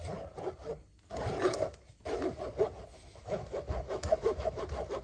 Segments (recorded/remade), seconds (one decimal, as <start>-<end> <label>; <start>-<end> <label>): 0.0-2.9 recorded; 2.9-4.6 remade; 4.6-5.0 recorded